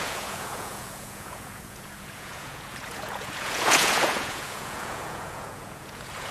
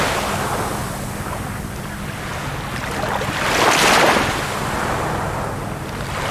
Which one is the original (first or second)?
second